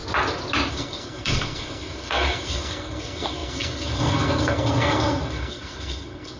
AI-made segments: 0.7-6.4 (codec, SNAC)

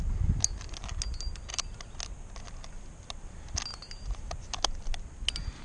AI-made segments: 3.7-4.3 (vocoder, BigVGAN v2)

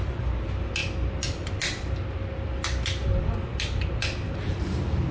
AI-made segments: none

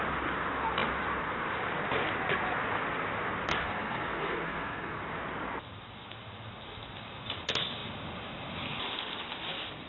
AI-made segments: 3.6-5.0 (codec, SNAC)

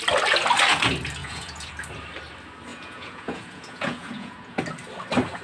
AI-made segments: 1.2-1.7 (vocoder, Vocos); 2.7-4.6

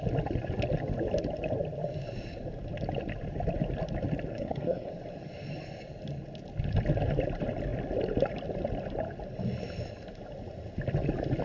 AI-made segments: 4.3-4.9 (codec, SNAC)

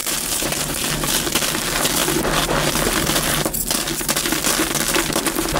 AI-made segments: 0.0-0.9 (vocoder, BigVGAN v2)